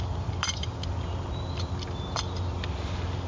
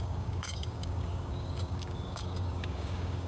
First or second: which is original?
first